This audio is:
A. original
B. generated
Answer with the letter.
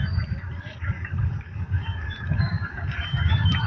B